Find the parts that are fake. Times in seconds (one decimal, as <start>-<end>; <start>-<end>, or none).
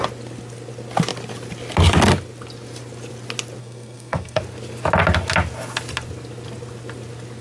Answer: 3.6-4.4